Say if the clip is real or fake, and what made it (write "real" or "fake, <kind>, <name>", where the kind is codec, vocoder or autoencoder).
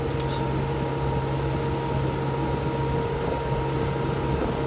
real